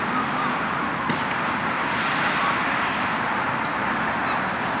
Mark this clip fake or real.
real